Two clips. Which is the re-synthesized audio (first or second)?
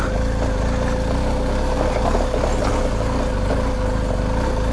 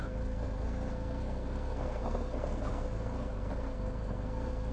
second